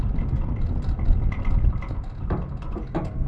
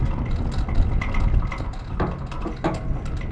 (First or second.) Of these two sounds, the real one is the second